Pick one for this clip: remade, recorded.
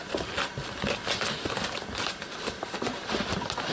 recorded